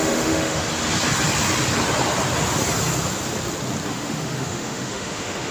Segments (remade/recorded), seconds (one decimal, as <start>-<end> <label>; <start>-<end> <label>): 0.0-0.6 remade; 0.6-3.9 recorded; 3.9-5.5 remade

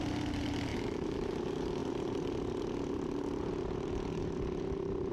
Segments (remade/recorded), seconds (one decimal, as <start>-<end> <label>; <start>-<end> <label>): 0.0-0.7 recorded; 0.7-1.3 remade; 1.3-5.1 recorded

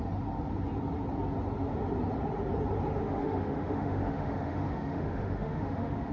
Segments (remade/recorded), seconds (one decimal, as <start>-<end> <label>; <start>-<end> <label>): 0.0-3.0 recorded; 3.0-6.1 remade

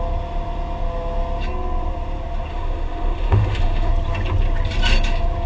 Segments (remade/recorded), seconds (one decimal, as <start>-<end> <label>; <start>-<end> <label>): 0.0-2.5 recorded; 2.5-3.9 remade; 3.9-5.5 recorded

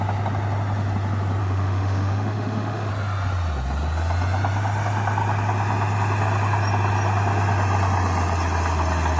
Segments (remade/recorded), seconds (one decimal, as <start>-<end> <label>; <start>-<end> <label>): 0.0-1.4 recorded; 1.4-2.9 remade; 2.9-9.2 recorded